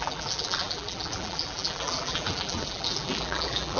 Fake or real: fake